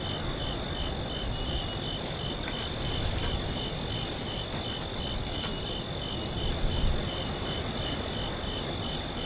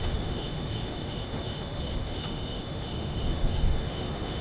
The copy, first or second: second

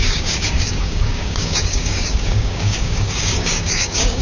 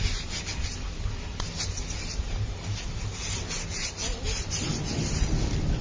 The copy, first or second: first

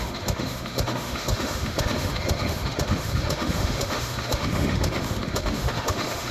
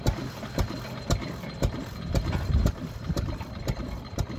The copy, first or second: first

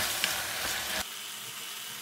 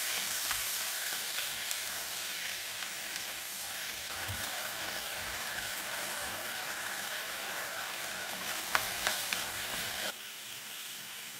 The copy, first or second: second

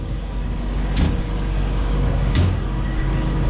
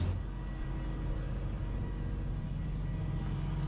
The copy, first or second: first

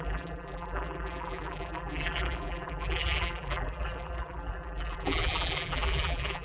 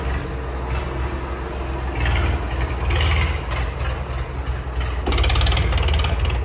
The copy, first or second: first